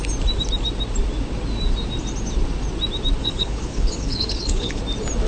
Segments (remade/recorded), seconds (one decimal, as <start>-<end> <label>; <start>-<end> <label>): 0.0-3.2 recorded; 3.2-4.8 remade; 4.8-5.3 recorded